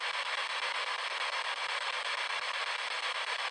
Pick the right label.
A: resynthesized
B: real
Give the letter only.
B